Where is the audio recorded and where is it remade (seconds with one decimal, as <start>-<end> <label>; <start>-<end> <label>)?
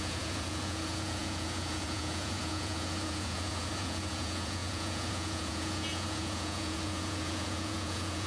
0.0-8.3 remade